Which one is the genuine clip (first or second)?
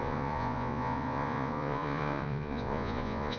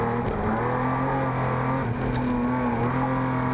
second